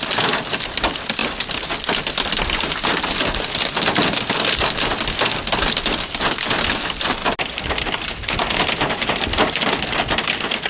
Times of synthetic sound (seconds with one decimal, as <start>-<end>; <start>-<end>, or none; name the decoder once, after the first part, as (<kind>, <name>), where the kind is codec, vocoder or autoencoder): none